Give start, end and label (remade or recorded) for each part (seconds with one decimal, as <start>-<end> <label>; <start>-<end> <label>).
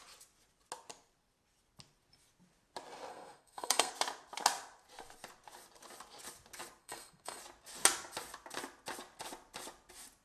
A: 0.0-3.1 recorded; 3.1-3.9 remade; 3.9-6.8 recorded; 6.8-7.4 remade; 7.4-10.2 recorded